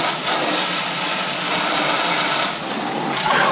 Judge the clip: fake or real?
real